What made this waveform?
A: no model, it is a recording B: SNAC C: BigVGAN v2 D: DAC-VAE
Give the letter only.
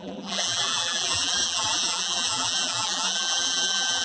C